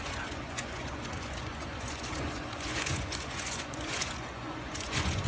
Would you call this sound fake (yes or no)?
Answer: yes